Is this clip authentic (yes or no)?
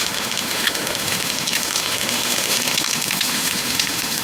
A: no